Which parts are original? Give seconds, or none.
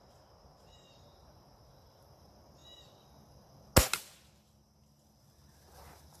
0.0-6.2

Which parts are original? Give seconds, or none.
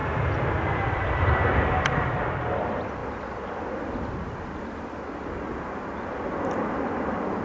0.0-7.4